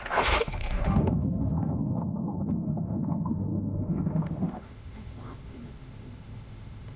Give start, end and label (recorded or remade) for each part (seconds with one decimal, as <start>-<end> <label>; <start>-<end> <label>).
0.0-7.0 remade